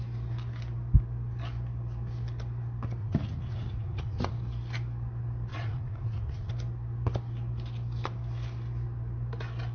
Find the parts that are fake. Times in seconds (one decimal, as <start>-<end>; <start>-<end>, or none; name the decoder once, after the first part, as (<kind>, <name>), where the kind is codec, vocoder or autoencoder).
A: 3.0-4.3 (vocoder, Vocos); 5.5-6.5